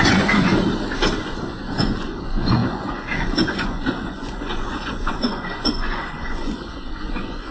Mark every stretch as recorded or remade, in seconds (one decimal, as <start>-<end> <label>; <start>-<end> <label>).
0.0-0.5 remade; 0.5-1.2 recorded; 1.2-7.5 remade

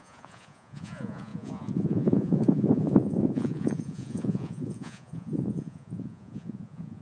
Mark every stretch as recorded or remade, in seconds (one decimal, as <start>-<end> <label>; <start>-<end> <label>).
0.0-7.0 remade

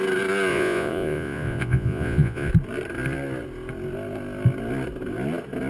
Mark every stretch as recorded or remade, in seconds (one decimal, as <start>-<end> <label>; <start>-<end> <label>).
0.0-0.5 recorded; 0.5-2.5 remade; 2.5-5.7 recorded

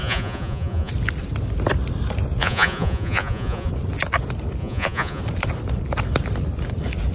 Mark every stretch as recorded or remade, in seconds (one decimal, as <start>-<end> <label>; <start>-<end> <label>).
0.0-0.9 remade; 0.9-2.4 recorded; 2.4-3.7 remade; 3.7-4.6 recorded; 4.6-5.2 remade; 5.2-7.1 recorded

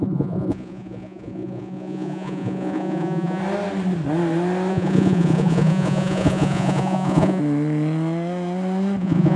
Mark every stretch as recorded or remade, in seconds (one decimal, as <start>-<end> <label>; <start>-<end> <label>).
0.0-3.4 remade; 3.4-4.7 recorded; 4.7-7.4 remade; 7.4-9.0 recorded; 9.0-9.4 remade

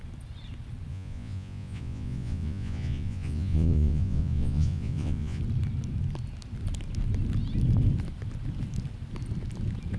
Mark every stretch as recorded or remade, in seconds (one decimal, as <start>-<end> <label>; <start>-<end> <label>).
0.0-0.9 recorded; 0.9-5.4 remade; 5.4-10.0 recorded